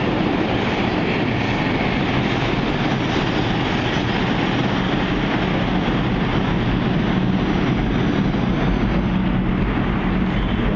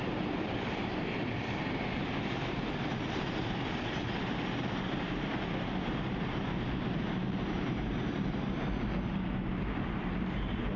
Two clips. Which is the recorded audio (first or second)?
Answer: first